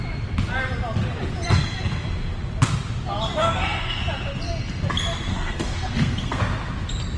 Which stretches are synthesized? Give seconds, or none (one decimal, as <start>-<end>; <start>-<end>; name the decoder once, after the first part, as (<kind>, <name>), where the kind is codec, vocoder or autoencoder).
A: 3.4-4.0 (codec, SNAC); 5.3-6.4